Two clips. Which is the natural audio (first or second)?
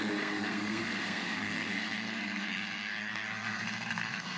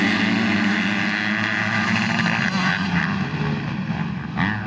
second